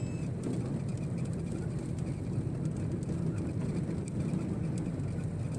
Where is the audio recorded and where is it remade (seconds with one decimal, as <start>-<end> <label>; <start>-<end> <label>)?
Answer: 0.0-5.6 recorded